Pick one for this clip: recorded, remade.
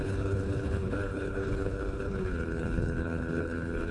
remade